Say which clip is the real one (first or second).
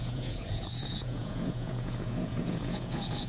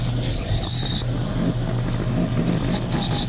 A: second